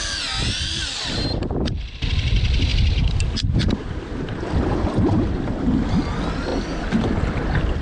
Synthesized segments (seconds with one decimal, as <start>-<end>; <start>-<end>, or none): 2.7-6.0